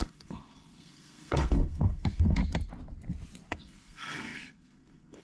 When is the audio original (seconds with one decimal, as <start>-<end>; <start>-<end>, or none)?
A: 2.4-3.5